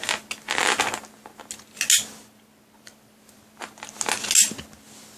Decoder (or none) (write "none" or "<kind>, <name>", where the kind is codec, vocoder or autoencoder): none